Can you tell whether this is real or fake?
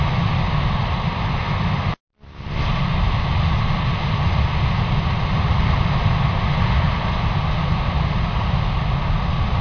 real